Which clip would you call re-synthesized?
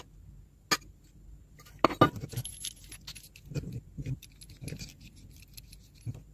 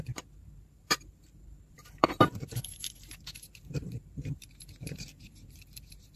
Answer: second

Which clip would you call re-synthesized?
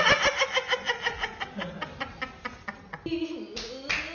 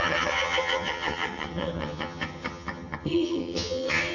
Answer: second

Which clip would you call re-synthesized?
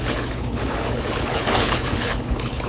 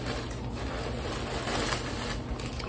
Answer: first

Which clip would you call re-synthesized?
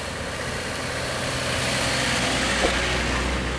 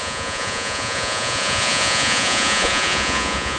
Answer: second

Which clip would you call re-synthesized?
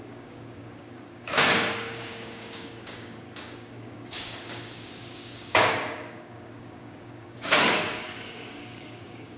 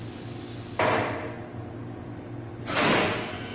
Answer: first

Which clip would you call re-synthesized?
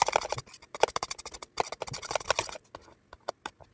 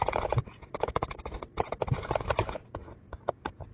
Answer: second